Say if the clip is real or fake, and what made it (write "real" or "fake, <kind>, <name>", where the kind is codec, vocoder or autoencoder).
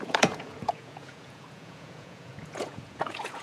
fake, vocoder, Vocos